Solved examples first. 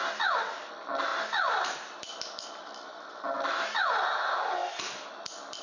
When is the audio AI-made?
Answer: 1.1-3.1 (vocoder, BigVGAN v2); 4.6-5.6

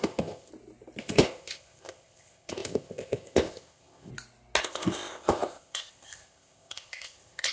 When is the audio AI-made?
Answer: 0.0-0.5 (codec, ZipCodec); 1.0-4.1; 4.6-7.5